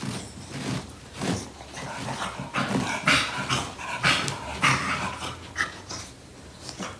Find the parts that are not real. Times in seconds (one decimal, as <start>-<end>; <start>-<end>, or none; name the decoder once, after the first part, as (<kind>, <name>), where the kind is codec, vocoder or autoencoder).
none